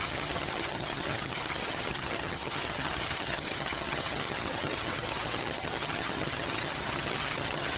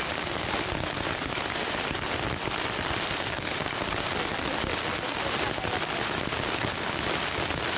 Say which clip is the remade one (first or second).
first